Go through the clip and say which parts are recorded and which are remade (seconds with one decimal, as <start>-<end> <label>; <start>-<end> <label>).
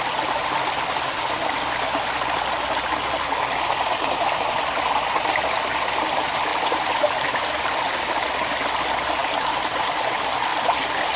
0.0-6.5 recorded; 6.5-7.8 remade; 7.8-11.2 recorded